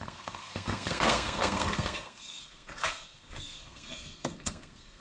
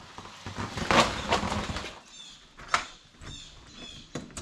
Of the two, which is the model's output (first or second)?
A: first